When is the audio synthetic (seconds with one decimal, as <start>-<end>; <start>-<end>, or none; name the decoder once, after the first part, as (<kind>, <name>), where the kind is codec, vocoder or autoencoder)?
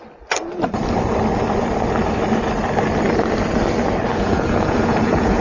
4.1-5.4 (vocoder, Vocos)